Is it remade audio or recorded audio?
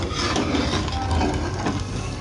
recorded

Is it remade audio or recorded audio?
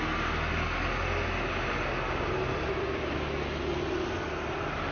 recorded